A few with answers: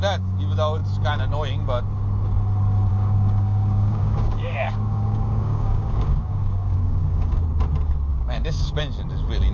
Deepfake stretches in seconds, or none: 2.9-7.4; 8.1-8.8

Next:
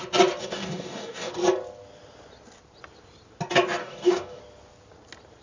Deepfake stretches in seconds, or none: 0.4-1.3; 3.8-4.4

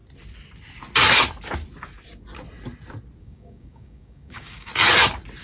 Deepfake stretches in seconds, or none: 3.2-4.7